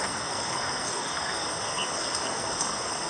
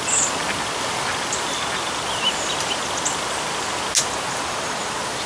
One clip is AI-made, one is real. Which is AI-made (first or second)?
first